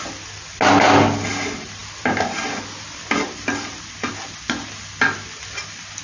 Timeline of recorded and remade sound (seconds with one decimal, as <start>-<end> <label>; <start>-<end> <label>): 0.0-6.0 recorded